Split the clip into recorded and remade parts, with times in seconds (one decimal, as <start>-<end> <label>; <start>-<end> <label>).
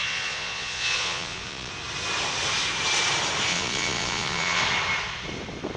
0.0-1.7 remade; 1.7-3.5 recorded; 3.5-4.6 remade; 4.6-5.8 recorded